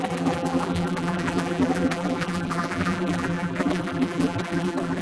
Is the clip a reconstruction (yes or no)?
yes